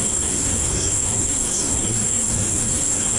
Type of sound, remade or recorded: remade